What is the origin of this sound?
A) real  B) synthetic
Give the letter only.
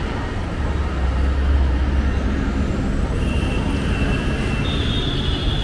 A